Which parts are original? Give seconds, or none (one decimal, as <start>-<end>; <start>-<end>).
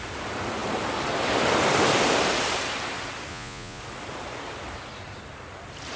0.0-3.3; 3.8-6.0